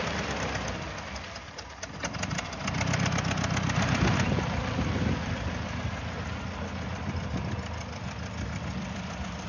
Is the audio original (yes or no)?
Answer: yes